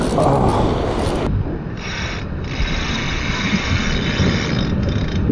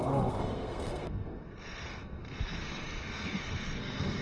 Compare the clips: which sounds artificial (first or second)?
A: second